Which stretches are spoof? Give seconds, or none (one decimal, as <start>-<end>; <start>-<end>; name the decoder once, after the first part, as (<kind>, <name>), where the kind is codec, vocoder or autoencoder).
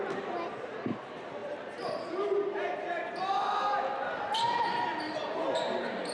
none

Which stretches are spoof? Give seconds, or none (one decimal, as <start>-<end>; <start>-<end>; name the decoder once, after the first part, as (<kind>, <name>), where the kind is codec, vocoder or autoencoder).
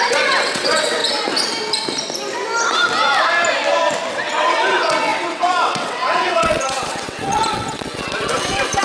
0.0-1.0 (vocoder, WaveNeXt); 4.1-8.8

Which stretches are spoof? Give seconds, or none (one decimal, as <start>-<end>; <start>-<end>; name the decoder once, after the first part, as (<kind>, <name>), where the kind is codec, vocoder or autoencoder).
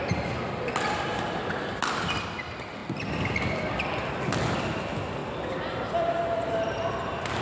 none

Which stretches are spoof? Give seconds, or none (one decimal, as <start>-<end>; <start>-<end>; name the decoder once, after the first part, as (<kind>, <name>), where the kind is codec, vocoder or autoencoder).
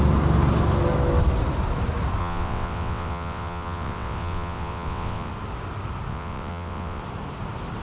2.2-5.3 (vocoder, WaveNeXt); 6.1-7.0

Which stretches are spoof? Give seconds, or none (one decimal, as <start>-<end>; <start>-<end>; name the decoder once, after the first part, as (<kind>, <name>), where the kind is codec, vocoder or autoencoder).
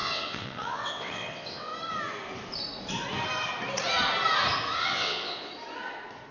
0.0-1.7 (vocoder, WaveNeXt); 4.8-5.5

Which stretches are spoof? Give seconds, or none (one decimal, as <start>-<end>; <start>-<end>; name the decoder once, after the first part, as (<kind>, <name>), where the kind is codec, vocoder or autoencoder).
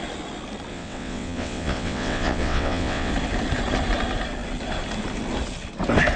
0.7-3.1 (vocoder, WaveNeXt)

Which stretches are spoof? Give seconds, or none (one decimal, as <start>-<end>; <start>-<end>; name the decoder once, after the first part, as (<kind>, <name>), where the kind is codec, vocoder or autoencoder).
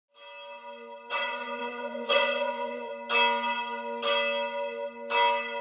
1.1-2.9 (vocoder, WaveNeXt)